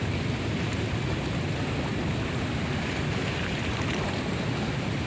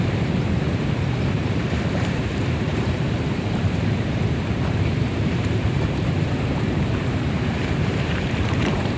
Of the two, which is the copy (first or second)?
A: second